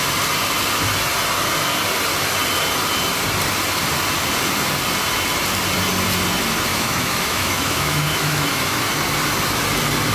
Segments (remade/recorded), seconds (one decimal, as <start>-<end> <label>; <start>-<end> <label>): 0.0-6.7 recorded; 6.7-8.9 remade; 8.9-10.1 recorded